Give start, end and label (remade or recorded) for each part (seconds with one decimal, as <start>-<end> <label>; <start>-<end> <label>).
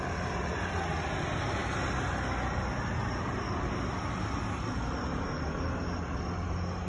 0.0-6.9 recorded